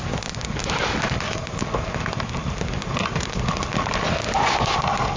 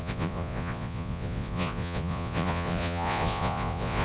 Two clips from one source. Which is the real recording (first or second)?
first